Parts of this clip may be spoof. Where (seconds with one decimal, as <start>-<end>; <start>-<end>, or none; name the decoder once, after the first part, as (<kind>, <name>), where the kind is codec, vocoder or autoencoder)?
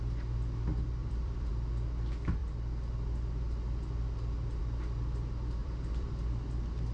1.0-1.5 (vocoder, BigVGAN v2); 5.6-6.1